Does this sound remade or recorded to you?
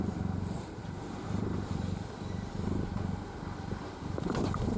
remade